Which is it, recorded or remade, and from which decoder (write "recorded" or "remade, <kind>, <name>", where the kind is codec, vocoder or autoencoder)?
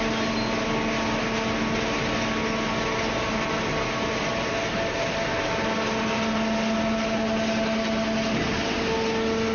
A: recorded